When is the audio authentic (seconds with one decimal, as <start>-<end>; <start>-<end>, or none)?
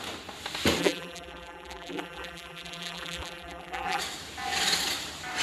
0.0-0.8; 4.0-5.4